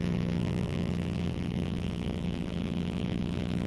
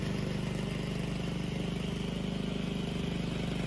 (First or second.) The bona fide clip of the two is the second